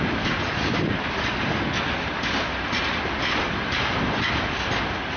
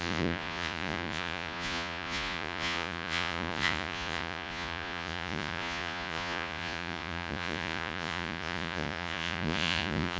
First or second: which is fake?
second